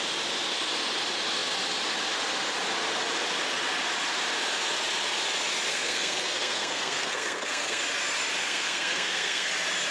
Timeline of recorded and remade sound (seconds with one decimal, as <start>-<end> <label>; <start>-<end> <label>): 0.0-5.7 recorded; 5.7-7.8 remade; 7.8-8.4 recorded; 8.4-9.5 remade; 9.5-9.9 recorded